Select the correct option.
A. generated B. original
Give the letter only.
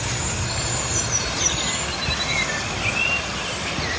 B